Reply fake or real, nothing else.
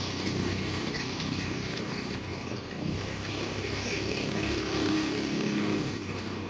fake